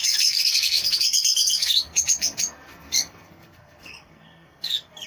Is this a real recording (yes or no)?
no